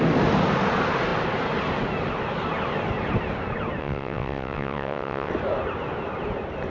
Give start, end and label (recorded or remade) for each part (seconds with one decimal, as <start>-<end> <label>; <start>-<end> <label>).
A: 0.0-3.8 recorded; 3.8-5.3 remade; 5.3-6.7 recorded